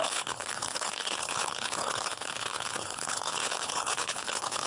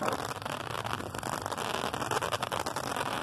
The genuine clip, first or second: second